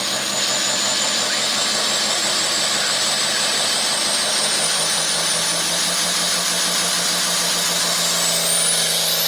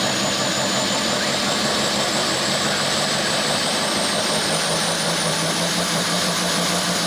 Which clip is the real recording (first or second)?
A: first